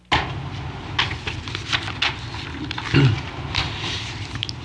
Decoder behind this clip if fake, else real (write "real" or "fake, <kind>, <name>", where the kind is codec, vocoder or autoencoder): real